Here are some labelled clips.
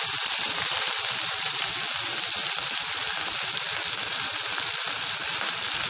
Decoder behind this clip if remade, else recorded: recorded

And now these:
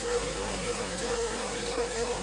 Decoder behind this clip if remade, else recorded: remade, codec, SNAC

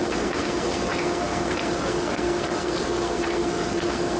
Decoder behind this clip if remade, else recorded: remade, codec, SNAC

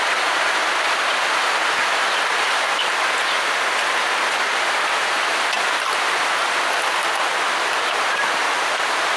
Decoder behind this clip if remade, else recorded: recorded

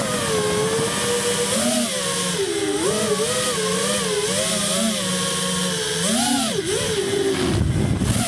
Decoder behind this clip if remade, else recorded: recorded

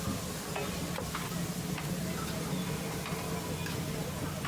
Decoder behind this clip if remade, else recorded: recorded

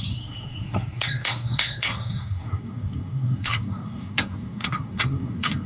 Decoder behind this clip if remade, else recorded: remade, codec, SNAC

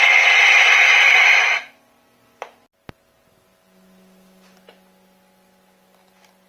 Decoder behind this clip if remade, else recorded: recorded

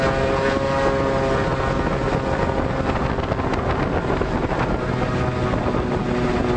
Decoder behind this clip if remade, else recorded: recorded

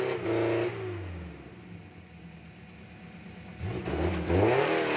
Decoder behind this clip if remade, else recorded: recorded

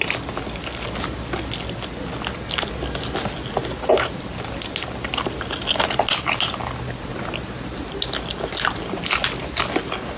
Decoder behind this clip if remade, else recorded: recorded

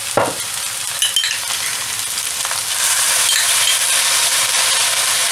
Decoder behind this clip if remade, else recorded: recorded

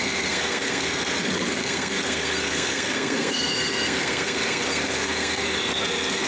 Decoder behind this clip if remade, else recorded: remade, codec, SNAC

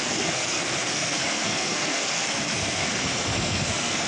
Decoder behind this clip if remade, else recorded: remade, codec, SNAC